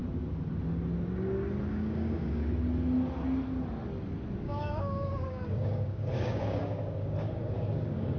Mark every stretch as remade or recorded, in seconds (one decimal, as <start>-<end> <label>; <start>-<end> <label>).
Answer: 0.0-1.7 recorded; 1.7-2.4 remade; 2.4-4.4 recorded; 4.4-8.2 remade